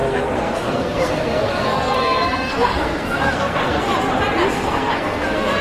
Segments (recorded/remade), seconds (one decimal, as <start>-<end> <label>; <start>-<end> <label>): 0.0-3.9 remade; 3.9-4.5 recorded; 4.5-5.6 remade